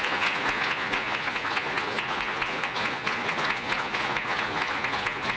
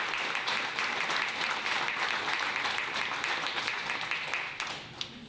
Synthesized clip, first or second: first